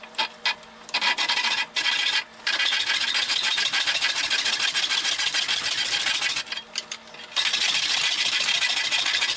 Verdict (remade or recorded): recorded